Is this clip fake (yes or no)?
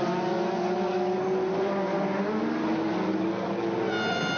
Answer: no